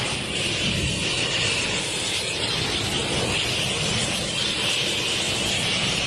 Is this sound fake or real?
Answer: real